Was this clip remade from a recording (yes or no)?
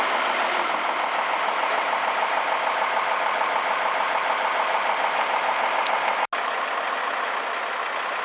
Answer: no